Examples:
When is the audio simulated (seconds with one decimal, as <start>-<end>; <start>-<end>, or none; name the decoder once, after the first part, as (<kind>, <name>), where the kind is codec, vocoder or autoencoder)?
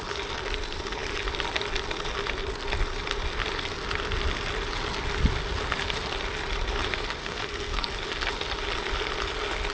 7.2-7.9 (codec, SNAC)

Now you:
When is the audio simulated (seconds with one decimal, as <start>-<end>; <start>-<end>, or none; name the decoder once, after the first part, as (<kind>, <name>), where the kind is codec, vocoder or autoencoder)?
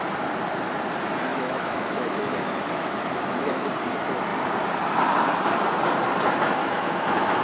1.3-3.7 (autoencoder, DAC-VAE); 6.6-7.4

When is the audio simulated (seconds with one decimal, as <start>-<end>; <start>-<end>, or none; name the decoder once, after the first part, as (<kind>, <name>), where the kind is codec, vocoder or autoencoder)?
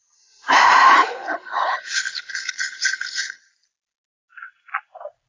1.0-3.4 (codec, HILCodec)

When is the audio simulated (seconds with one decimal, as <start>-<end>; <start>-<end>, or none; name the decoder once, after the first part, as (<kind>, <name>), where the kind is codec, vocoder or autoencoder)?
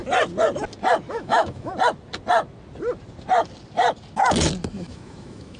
1.1-1.7 (autoencoder, DAC-VAE); 4.7-5.6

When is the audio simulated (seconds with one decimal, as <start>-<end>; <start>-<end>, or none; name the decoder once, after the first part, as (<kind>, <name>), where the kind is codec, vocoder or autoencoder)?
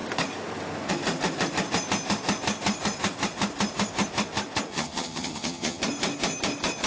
4.7-5.8 (vocoder, HiFi-GAN)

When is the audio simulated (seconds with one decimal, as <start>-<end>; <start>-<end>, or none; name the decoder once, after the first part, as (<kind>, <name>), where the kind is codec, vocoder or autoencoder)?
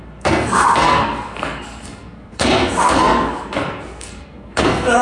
0.0-5.0 (codec, SNAC)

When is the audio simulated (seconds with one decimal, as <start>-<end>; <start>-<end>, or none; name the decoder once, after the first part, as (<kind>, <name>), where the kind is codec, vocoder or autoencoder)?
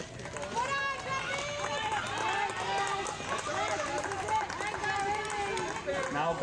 none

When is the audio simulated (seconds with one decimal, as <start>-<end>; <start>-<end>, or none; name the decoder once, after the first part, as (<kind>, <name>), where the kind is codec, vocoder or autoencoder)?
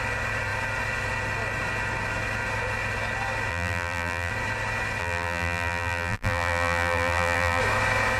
3.5-4.3 (vocoder, BigVGAN v2); 5.0-7.6